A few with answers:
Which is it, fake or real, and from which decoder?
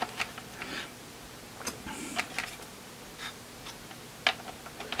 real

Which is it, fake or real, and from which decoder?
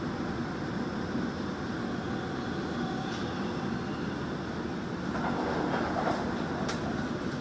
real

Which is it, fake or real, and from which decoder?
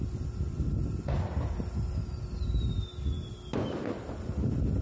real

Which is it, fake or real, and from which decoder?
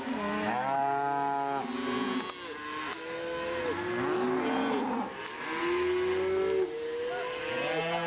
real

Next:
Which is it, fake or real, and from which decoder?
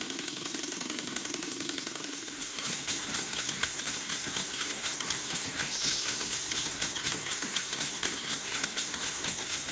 fake, codec, SNAC